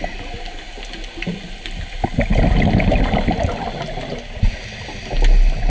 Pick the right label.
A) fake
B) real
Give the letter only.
B